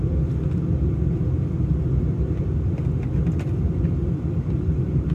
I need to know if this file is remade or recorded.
recorded